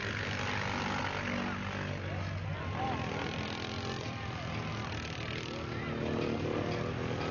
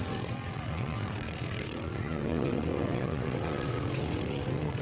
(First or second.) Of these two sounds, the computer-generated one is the second